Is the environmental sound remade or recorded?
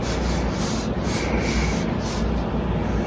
recorded